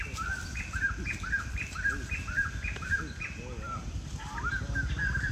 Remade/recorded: recorded